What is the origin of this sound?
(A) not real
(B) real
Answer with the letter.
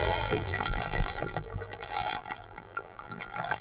A